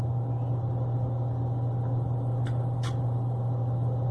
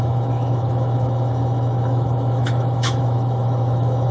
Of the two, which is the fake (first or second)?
second